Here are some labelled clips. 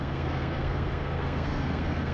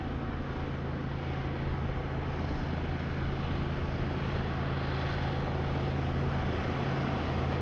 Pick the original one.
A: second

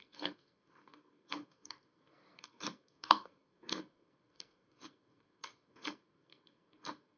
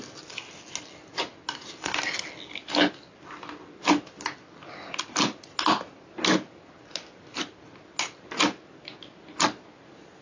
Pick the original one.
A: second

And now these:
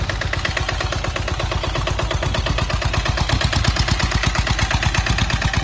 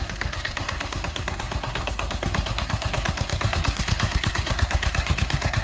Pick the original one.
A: first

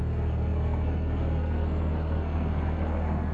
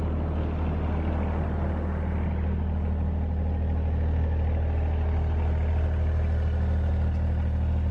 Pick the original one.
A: second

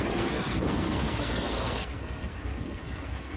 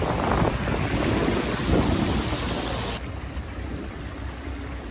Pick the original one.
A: second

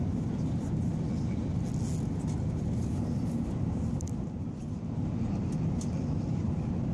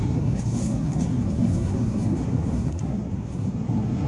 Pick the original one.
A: first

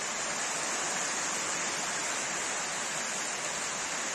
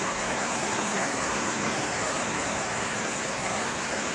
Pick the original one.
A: first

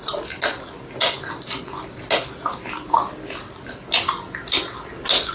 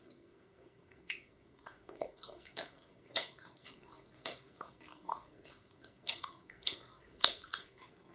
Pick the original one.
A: first